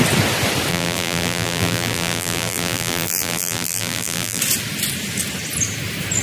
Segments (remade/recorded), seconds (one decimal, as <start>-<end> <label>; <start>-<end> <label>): 0.0-0.7 recorded; 0.7-4.4 remade; 4.4-6.2 recorded